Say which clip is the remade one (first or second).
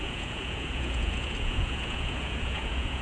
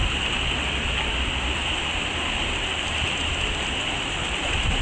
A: first